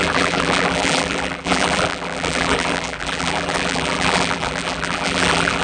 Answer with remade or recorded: remade